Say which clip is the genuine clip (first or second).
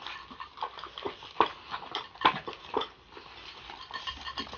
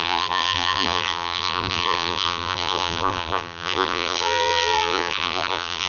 first